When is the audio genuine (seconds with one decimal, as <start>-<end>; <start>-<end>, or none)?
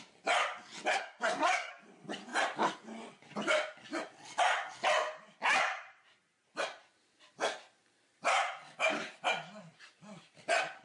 0.0-0.9; 1.7-10.8